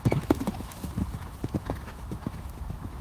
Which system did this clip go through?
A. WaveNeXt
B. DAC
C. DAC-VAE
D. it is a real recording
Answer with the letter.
C